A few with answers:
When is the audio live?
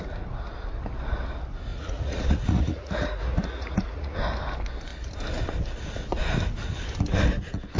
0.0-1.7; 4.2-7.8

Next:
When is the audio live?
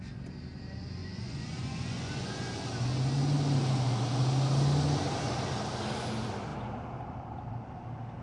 0.0-1.0; 2.5-8.2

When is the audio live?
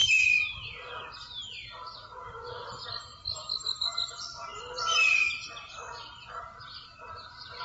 0.0-7.6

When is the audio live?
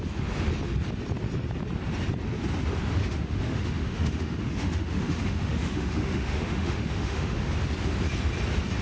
0.0-3.0; 7.5-8.8